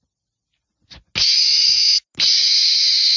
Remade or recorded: recorded